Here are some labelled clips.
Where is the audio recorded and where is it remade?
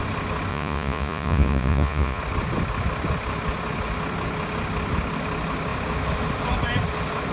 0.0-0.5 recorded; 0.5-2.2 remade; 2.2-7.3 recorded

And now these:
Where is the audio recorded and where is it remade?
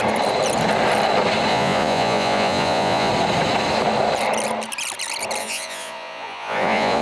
0.0-1.5 recorded; 1.5-3.1 remade; 3.1-5.4 recorded; 5.4-7.0 remade